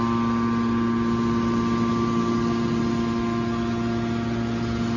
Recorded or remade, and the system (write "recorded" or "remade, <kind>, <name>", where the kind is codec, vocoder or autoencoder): recorded